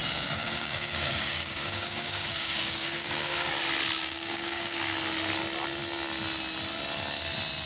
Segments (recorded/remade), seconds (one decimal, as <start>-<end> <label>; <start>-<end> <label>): 0.0-3.5 remade; 3.5-4.0 recorded; 4.0-4.8 remade; 4.8-7.7 recorded